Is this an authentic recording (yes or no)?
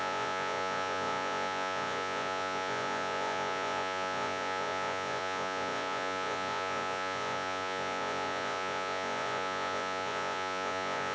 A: no